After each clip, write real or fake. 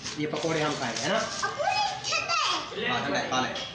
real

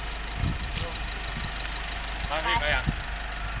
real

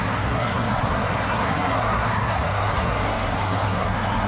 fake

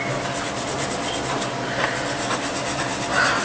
real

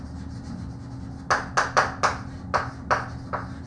real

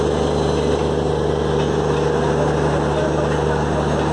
real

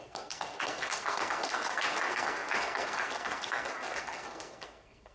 fake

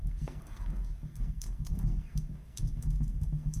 fake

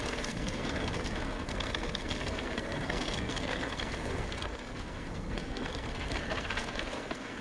fake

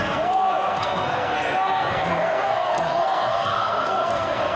fake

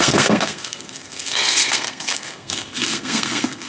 fake